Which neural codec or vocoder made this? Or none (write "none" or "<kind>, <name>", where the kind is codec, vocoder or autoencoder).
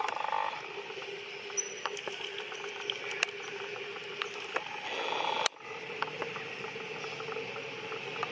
none